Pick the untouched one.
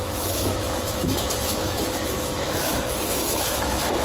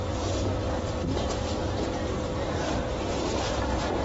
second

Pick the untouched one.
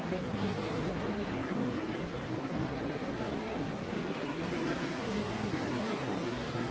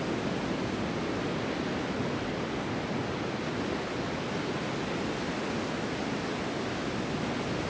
second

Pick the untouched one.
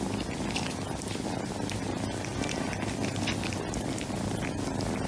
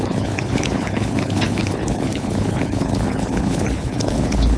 first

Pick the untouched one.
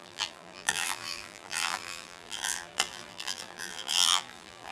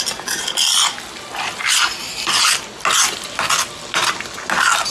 second